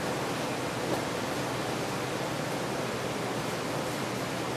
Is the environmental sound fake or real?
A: real